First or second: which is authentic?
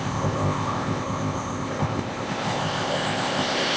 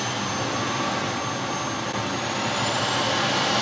second